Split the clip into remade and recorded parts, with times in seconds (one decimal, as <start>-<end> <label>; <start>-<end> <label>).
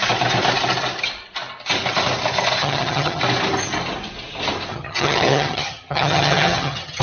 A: 0.0-2.6 recorded; 2.6-3.2 remade; 3.2-4.7 recorded; 4.7-7.0 remade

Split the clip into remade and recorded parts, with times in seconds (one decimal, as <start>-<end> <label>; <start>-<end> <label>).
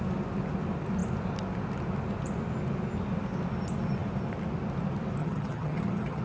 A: 0.0-5.2 recorded; 5.2-6.2 remade